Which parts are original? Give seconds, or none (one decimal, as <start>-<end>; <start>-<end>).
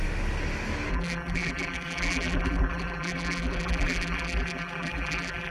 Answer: 0.0-0.9